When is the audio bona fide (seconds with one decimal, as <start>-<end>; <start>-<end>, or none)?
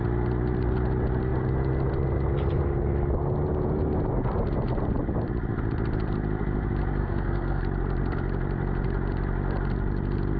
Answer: 0.0-7.0; 7.6-10.4